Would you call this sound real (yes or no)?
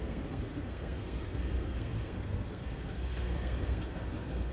no